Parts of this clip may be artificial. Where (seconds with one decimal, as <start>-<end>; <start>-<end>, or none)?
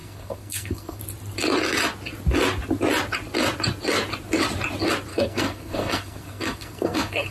0.0-1.0; 5.1-7.3